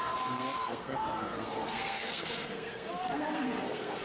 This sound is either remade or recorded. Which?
remade